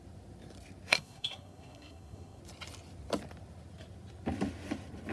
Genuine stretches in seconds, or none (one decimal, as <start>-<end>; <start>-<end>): 0.0-0.9; 2.4-5.1